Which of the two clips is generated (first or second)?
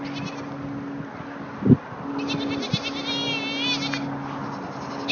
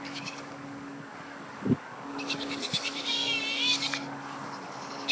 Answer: second